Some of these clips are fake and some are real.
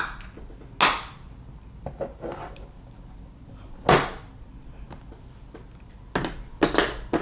real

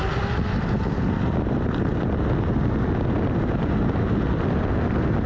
real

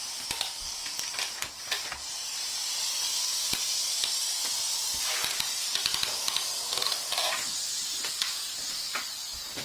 real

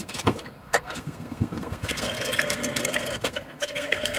fake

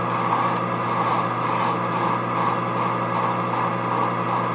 real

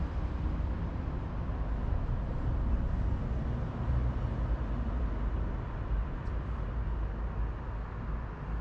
real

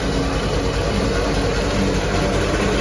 real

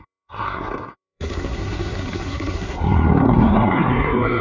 fake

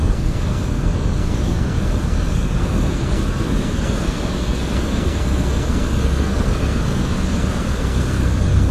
fake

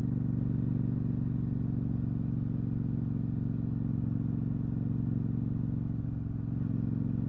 real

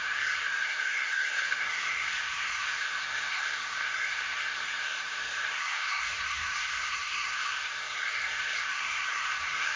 fake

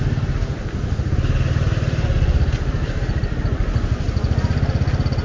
real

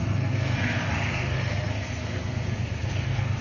fake